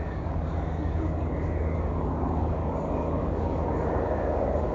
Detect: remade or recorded remade